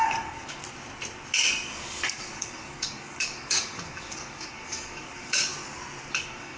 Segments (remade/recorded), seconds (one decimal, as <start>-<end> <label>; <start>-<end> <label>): 0.0-0.6 remade; 0.6-1.5 recorded; 1.5-5.5 remade; 5.5-6.1 recorded; 6.1-6.6 remade